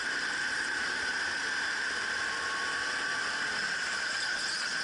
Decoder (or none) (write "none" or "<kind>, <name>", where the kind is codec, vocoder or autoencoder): none